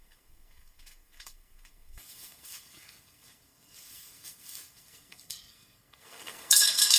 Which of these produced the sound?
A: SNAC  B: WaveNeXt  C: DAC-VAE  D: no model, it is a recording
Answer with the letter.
A